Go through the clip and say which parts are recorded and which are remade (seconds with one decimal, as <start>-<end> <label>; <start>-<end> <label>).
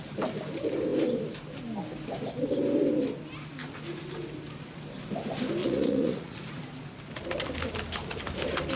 0.0-5.6 recorded; 5.6-6.6 remade; 6.6-8.8 recorded